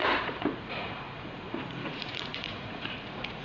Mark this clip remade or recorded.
remade